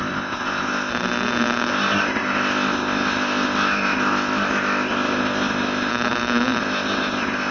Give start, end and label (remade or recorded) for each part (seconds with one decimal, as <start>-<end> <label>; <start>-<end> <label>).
0.0-0.9 remade; 0.9-1.7 recorded; 1.7-5.9 remade; 5.9-6.6 recorded; 6.6-7.5 remade